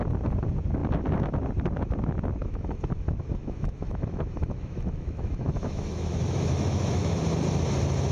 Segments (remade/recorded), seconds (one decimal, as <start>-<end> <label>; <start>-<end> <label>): 0.0-2.4 recorded; 2.4-7.2 remade; 7.2-8.1 recorded